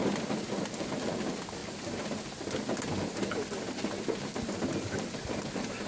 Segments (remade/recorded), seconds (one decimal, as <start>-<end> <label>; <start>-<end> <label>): 0.0-5.9 recorded